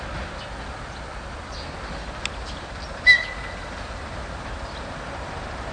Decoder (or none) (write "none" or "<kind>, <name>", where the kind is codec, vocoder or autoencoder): none